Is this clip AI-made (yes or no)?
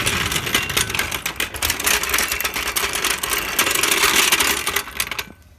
no